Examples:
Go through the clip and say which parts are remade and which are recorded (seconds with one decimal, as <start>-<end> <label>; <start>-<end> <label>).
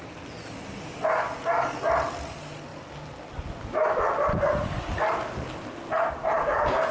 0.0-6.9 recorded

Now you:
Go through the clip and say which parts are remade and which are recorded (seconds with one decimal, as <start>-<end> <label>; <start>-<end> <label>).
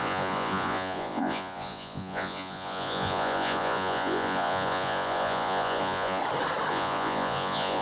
0.0-6.2 remade; 6.2-6.7 recorded; 6.7-7.8 remade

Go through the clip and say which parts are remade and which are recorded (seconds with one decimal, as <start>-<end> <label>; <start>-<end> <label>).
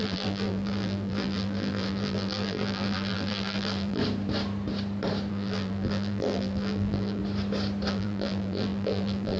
0.0-4.0 remade; 4.0-5.3 recorded; 5.3-7.2 remade; 7.2-7.9 recorded; 7.9-9.4 remade